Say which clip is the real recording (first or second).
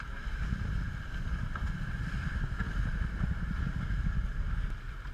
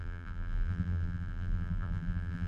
first